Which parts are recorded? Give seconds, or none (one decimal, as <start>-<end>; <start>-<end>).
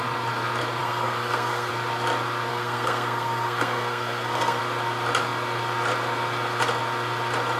0.0-0.8; 1.7-2.5; 4.6-7.6